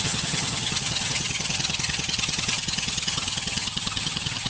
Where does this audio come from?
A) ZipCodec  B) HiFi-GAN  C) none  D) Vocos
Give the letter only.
B